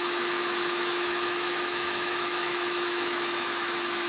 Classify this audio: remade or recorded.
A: remade